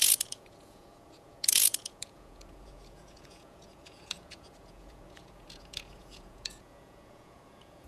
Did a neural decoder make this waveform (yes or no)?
yes